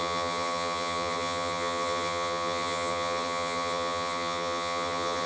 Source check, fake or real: fake